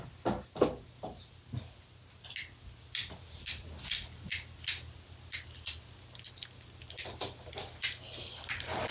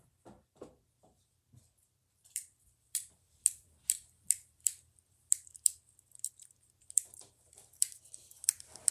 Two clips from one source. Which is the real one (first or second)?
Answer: first